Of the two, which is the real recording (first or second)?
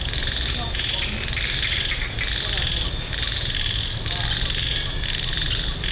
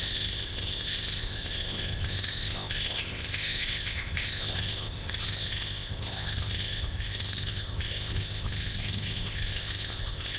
first